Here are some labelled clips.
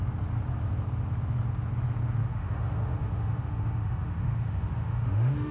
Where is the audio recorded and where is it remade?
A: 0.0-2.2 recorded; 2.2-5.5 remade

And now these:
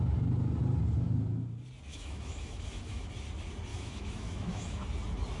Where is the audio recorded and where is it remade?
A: 0.0-1.9 recorded; 1.9-3.1 remade; 3.1-3.7 recorded; 3.7-4.8 remade; 4.8-5.4 recorded

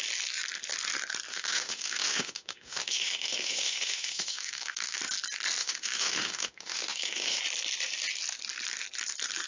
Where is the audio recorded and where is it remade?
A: 0.0-1.3 recorded; 1.3-5.0 remade; 5.0-5.6 recorded; 5.6-7.4 remade; 7.4-9.5 recorded

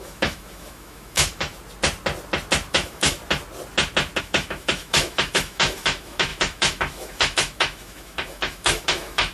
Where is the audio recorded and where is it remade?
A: 0.0-1.5 remade; 1.5-2.7 recorded; 2.7-3.2 remade; 3.2-4.2 recorded; 4.2-9.3 remade

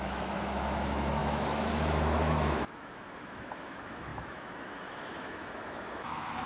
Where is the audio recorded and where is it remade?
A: 0.0-6.5 remade

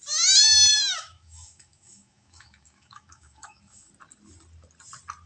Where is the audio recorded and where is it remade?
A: 0.0-0.7 recorded; 0.7-3.9 remade; 3.9-5.3 recorded